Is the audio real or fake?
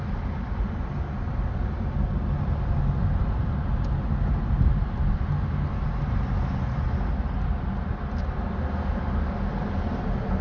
real